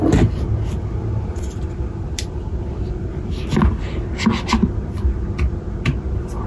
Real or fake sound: real